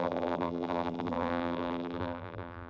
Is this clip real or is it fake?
fake